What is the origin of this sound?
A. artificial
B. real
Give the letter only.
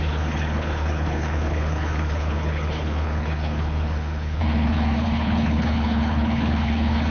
A